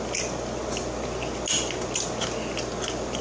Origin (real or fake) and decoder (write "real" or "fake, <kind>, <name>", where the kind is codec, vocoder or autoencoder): real